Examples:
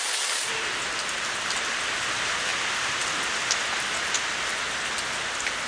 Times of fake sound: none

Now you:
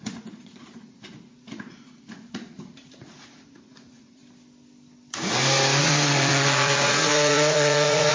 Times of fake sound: 0.0-4.2; 5.8-8.1

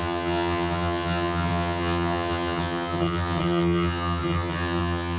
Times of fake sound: 0.0-5.2

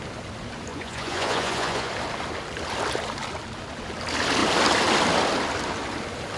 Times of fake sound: 0.7-1.9

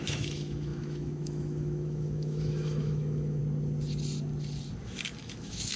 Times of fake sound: 0.0-3.4; 5.2-5.8

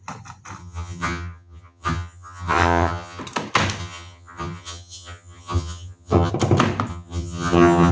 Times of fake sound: 0.6-3.2; 3.8-6.3; 6.9-7.9

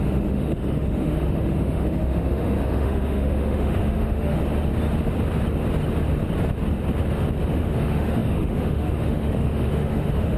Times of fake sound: 0.0-4.4; 7.5-10.4